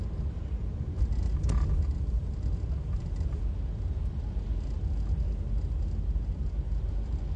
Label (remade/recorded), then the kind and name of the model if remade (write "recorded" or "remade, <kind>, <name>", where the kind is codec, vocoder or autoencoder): recorded